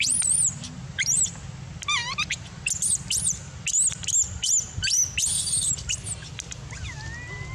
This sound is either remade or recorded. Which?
recorded